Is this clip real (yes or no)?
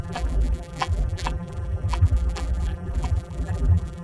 no